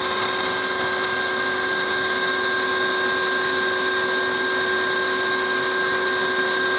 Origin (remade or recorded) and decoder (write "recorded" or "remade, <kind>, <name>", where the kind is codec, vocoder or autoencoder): recorded